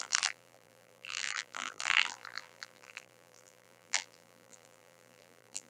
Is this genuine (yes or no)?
no